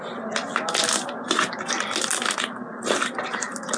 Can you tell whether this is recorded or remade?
recorded